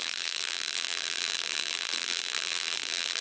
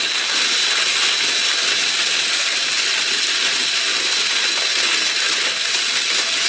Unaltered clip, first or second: second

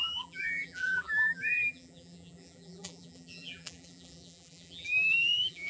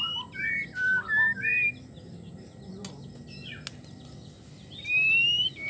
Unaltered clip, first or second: second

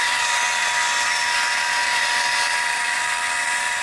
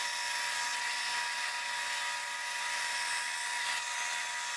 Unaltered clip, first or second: second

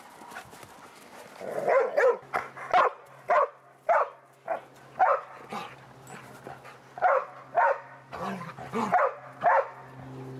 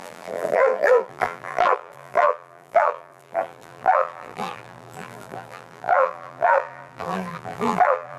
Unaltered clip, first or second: first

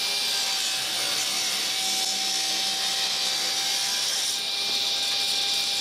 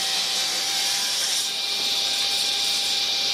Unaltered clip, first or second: first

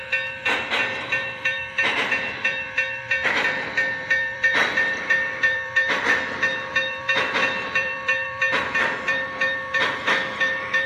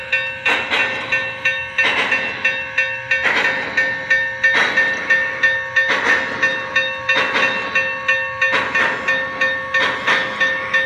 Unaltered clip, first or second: second